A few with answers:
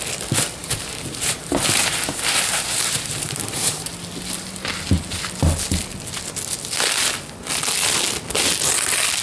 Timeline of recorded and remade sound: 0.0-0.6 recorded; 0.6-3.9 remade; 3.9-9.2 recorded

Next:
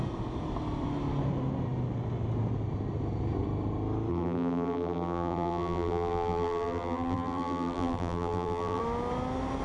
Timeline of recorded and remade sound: 0.0-4.1 recorded; 4.1-8.8 remade; 8.8-9.6 recorded

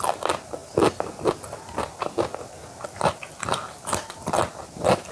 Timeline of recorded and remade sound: 0.0-5.1 recorded